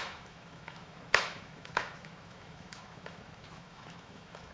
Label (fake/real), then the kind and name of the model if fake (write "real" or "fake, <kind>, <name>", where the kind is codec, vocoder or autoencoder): fake, autoencoder, DAC-VAE